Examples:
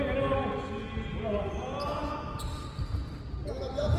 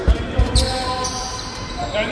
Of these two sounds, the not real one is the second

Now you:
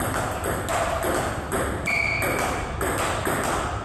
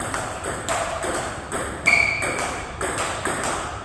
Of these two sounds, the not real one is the second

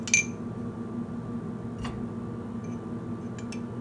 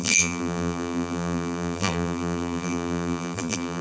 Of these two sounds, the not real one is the second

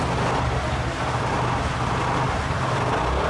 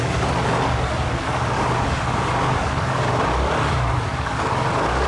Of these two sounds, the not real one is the second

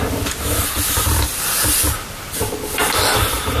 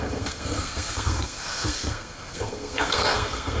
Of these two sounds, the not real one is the second